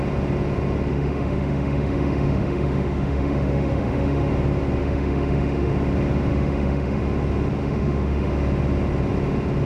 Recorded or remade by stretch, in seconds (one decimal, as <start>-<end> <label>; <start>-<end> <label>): 0.0-0.9 recorded; 0.9-4.3 remade; 4.3-4.8 recorded; 4.8-5.7 remade; 5.7-6.3 recorded; 6.3-7.0 remade; 7.0-7.6 recorded; 7.6-8.3 remade; 8.3-9.6 recorded